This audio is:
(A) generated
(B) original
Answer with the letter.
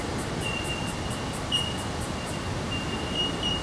B